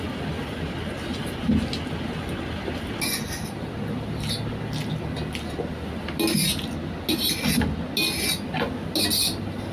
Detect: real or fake real